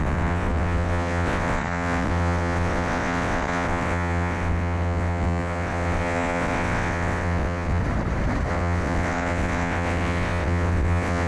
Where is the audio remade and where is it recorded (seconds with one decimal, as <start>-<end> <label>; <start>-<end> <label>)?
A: 0.0-7.8 remade; 7.8-8.5 recorded; 8.5-11.3 remade